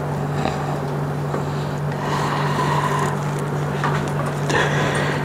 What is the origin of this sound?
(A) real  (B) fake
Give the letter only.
A